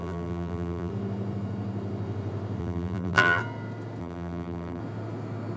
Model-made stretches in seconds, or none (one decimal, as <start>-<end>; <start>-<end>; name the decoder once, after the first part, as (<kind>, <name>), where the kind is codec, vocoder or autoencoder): 0.0-0.9 (vocoder, BigVGAN v2); 2.6-3.4; 4.0-4.8